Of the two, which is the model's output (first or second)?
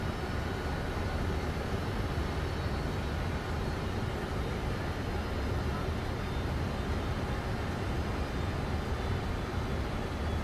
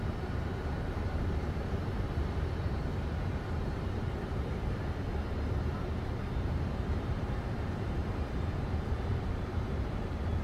second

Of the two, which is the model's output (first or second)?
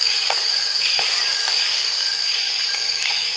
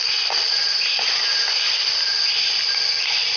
first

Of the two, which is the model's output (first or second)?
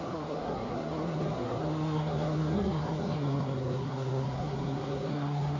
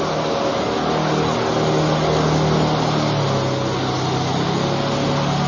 first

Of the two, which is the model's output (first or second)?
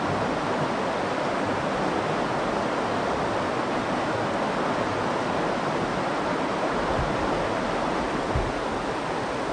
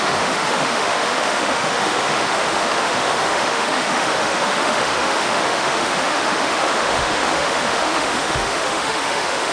second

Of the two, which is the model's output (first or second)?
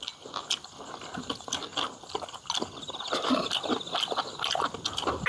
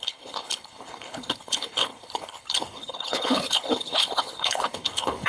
second